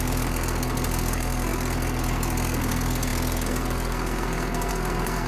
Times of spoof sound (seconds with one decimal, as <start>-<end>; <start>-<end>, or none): 0.0-5.3